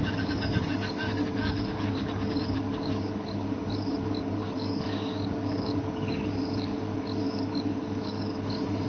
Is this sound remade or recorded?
remade